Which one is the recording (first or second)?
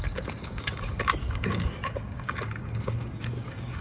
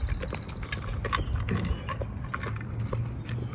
second